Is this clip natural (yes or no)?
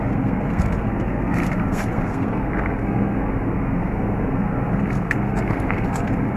no